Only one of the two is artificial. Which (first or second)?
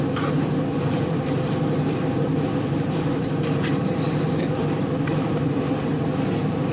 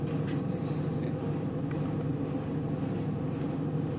first